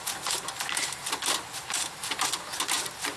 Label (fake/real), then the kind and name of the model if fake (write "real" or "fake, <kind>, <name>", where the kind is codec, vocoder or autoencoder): real